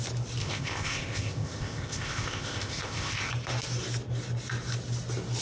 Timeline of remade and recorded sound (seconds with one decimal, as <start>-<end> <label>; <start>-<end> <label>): 0.0-0.4 recorded; 0.4-3.3 remade; 3.3-5.4 recorded